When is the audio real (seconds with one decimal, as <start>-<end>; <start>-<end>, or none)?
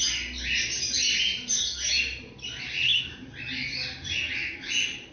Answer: 0.0-5.1